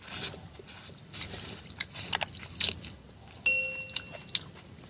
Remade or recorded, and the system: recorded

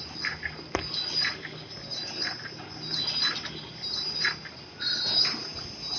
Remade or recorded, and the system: recorded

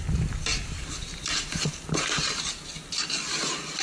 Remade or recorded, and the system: recorded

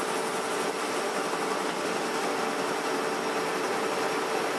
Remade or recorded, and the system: recorded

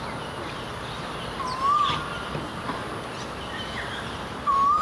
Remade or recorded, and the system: recorded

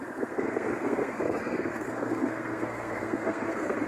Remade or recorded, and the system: remade, codec, SNAC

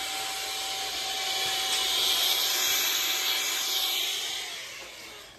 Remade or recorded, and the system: recorded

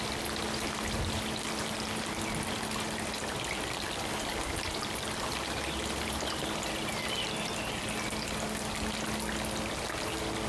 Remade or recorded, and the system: recorded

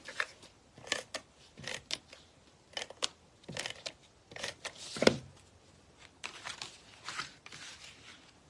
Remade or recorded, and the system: recorded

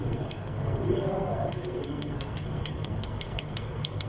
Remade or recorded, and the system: remade, codec, SNAC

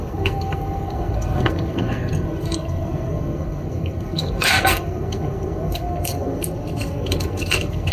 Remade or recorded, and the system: remade, codec, SNAC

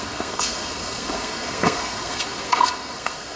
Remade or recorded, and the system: remade, codec, SNAC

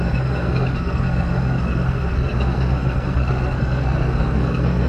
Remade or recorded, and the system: remade, codec, SNAC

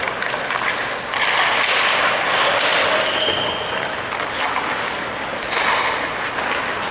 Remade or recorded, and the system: recorded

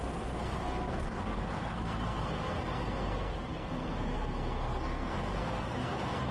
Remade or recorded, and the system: remade, codec, SNAC